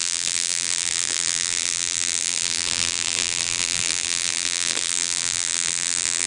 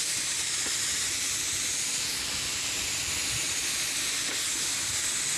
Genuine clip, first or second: second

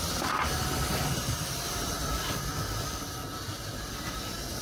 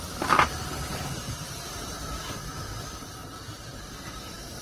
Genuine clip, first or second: first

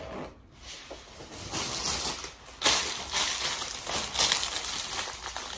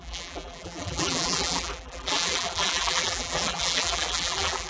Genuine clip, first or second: first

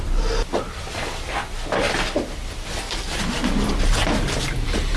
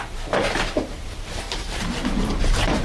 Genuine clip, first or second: first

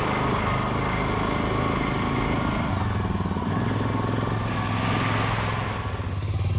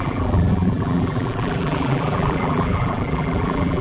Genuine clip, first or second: first